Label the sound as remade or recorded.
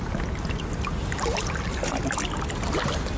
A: recorded